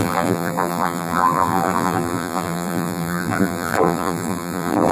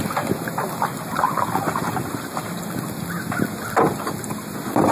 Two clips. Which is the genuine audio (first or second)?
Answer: second